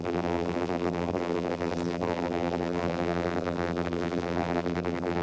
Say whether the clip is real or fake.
fake